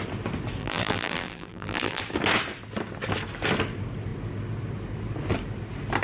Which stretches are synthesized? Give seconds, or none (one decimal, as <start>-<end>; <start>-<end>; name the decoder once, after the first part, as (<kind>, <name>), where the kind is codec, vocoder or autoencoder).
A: 0.6-2.0 (vocoder, BigVGAN v2)